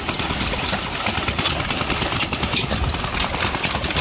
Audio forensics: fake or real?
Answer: real